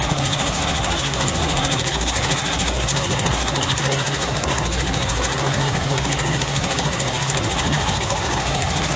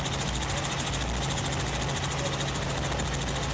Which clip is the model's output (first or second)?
first